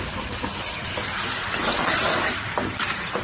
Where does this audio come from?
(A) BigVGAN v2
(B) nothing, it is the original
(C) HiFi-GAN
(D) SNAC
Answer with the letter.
A